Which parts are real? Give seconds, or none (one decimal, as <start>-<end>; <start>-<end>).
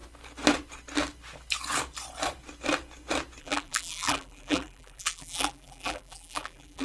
0.0-3.4